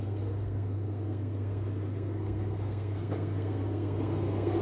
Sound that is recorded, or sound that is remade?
remade